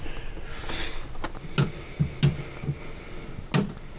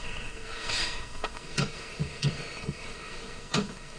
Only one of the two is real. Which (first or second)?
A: first